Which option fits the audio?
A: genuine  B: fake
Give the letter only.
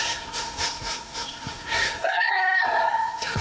B